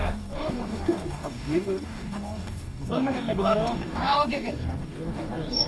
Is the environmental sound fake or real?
fake